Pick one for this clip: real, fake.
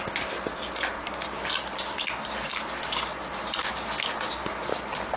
real